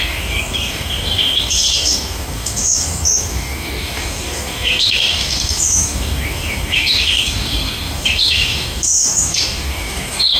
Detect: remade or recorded remade